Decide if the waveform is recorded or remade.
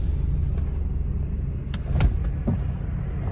recorded